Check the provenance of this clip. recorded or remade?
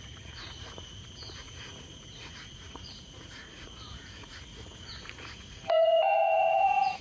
remade